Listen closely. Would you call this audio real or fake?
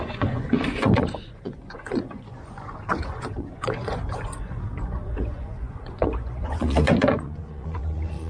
fake